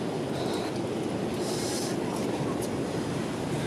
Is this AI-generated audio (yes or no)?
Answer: no